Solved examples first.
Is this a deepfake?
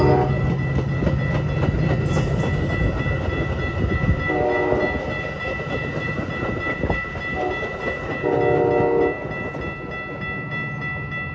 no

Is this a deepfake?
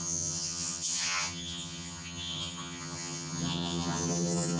yes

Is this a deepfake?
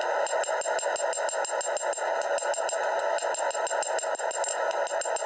no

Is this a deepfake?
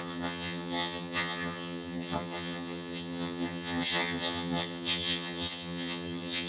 yes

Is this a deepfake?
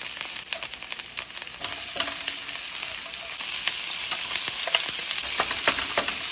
no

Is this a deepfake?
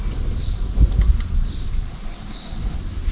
no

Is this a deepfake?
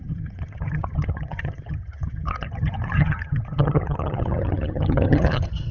yes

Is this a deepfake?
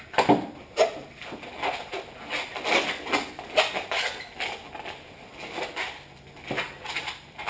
no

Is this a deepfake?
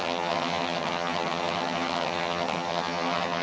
yes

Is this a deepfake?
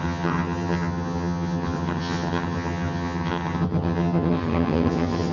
yes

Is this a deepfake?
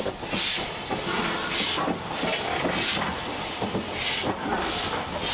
no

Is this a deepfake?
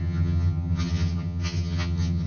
yes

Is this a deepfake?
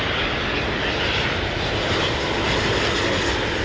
no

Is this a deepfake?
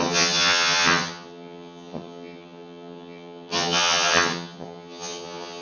yes